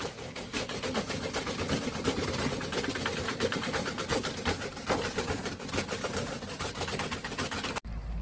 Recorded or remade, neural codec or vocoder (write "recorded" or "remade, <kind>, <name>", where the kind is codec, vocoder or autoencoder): recorded